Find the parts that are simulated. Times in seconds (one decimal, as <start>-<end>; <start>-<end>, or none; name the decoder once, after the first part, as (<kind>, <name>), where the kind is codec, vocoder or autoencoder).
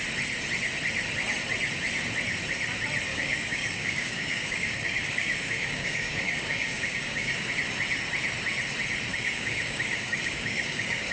3.1-7.5 (codec, DAC); 9.1-11.1